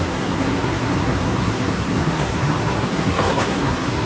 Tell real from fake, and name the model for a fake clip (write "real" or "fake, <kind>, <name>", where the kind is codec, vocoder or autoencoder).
fake, codec, SNAC